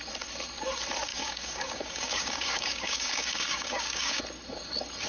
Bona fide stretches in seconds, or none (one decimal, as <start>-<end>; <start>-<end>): 0.0-1.1; 4.2-5.1